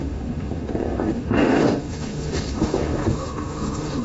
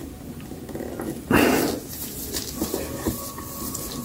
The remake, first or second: first